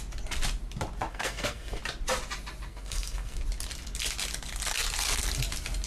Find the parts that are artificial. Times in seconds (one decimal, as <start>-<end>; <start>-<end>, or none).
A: 1.1-1.8; 2.7-3.4